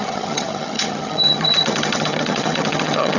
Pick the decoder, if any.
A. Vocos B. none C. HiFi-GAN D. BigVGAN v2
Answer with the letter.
C